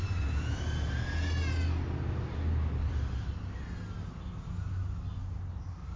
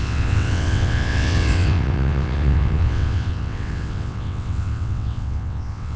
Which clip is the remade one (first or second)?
second